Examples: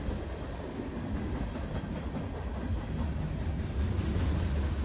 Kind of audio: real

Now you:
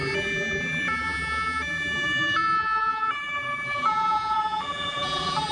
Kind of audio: fake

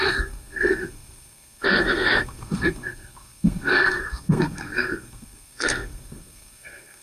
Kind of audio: fake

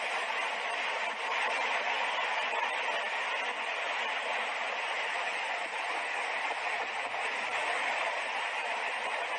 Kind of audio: real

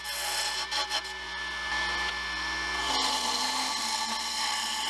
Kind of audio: real